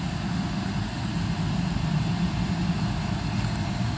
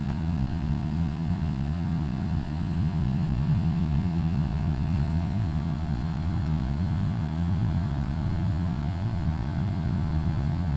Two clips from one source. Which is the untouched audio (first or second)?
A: first